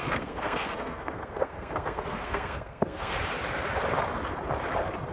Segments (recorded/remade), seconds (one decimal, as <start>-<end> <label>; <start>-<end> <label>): 0.0-3.1 remade; 3.1-5.1 recorded